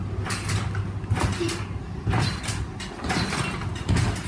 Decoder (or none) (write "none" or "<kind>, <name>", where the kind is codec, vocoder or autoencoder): none